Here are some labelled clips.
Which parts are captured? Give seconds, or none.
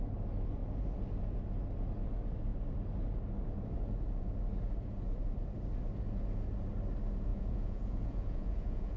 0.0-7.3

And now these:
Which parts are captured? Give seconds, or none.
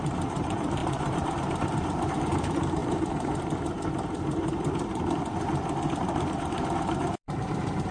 5.3-6.2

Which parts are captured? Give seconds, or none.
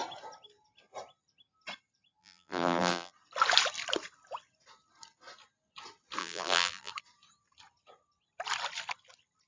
0.0-2.2; 3.1-6.2; 6.9-9.5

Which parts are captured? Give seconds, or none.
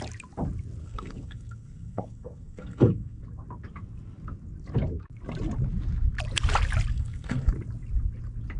0.0-0.8; 3.2-6.9; 7.5-8.6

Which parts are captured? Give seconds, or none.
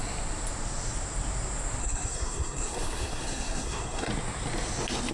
0.0-1.8; 4.1-5.1